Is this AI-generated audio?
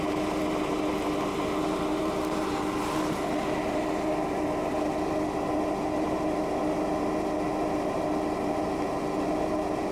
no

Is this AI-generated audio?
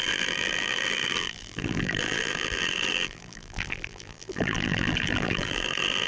yes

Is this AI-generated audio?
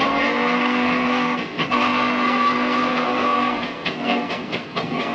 yes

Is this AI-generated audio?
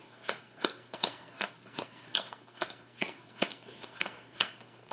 yes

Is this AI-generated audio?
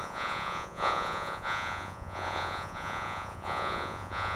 yes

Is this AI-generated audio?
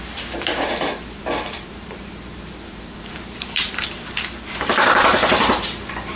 yes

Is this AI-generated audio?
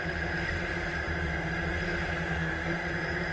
yes